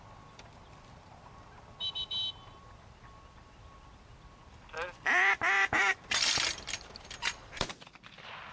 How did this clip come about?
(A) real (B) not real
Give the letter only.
B